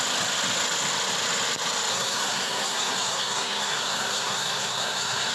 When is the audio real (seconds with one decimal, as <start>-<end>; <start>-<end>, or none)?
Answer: 0.0-1.9